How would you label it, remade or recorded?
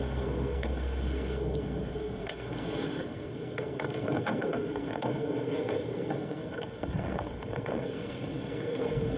remade